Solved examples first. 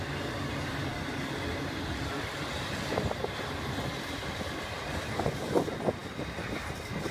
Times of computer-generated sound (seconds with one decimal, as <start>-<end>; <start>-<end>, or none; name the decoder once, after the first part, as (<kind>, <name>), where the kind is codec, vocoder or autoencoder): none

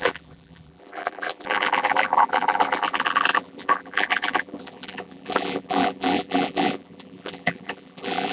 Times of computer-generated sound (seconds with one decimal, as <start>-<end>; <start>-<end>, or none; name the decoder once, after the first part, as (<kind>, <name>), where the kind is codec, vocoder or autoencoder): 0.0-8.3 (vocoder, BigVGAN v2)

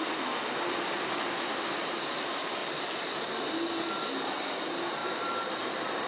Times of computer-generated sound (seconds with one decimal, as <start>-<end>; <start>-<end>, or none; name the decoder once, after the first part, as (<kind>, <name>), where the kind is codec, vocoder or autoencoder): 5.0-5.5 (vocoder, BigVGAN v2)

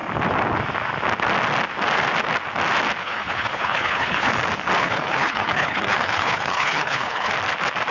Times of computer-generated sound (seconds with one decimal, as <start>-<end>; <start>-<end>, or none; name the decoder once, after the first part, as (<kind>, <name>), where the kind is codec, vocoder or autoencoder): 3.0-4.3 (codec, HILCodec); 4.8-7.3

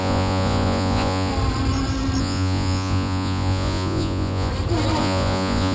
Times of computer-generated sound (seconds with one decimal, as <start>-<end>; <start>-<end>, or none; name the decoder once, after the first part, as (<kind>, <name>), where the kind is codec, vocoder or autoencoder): 0.0-1.3 (vocoder, Vocos); 2.2-4.5; 5.0-5.7